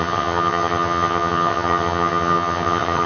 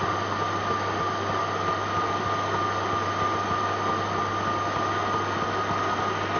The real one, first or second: second